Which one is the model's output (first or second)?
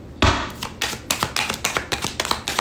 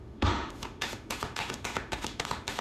second